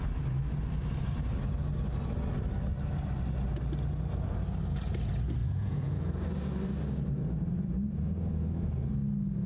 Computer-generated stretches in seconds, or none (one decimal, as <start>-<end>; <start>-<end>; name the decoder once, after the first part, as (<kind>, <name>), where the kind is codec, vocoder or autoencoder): 5.4-6.1 (vocoder, Vocos)